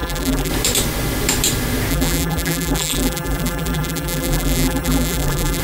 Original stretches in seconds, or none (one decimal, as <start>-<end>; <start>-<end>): 0.5-1.9